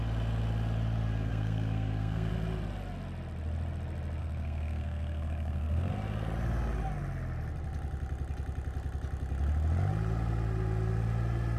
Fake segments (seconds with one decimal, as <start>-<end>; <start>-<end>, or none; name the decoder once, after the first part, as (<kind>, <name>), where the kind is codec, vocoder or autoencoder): 1.3-2.3 (codec, SNAC); 4.2-5.9